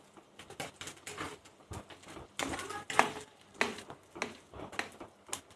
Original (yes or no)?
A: yes